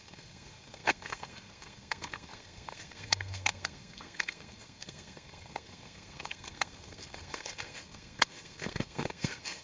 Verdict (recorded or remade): remade